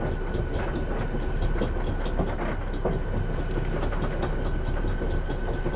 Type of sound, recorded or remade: recorded